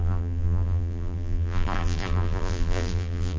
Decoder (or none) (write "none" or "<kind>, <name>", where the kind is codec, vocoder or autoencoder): vocoder, BigVGAN v2